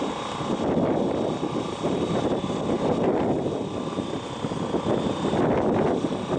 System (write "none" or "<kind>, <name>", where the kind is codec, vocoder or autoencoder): none